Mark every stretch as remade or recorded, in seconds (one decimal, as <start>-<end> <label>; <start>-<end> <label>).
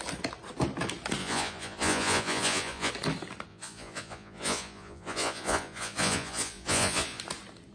0.0-1.2 recorded; 1.2-2.9 remade; 2.9-3.5 recorded; 3.5-7.2 remade; 7.2-7.7 recorded